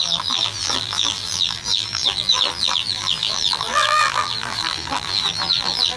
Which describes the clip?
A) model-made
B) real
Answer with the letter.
A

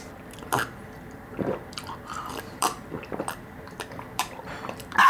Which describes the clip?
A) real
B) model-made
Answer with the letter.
B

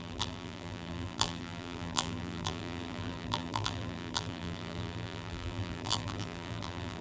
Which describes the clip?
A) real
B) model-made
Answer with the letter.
B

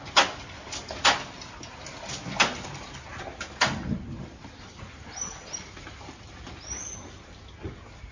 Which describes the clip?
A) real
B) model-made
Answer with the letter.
A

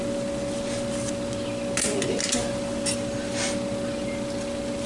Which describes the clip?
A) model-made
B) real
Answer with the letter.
B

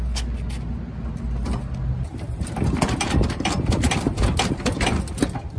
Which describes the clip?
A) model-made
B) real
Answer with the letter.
B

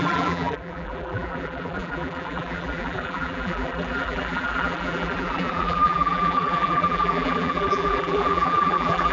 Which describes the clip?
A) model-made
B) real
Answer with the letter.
A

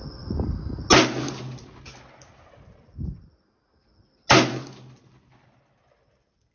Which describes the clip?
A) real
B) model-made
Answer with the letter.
A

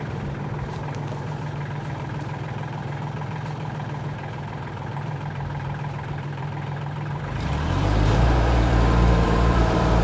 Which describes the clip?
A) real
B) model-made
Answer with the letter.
B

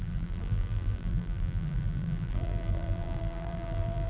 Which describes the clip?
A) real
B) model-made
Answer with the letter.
B